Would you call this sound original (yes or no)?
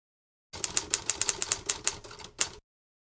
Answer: yes